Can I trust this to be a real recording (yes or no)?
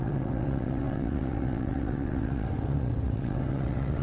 no